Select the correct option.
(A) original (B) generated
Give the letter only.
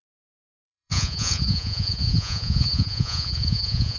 B